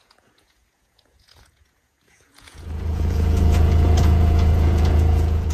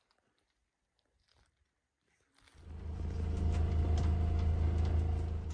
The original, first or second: second